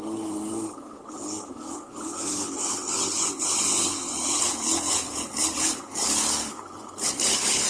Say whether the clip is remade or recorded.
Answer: remade